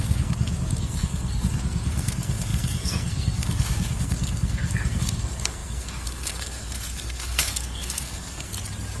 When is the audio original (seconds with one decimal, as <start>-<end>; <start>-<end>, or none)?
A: 8.5-9.0